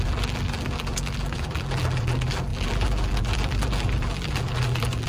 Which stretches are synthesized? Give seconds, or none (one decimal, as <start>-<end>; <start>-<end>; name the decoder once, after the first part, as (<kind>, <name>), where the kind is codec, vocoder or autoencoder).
0.0-5.1 (vocoder, BigVGAN v2)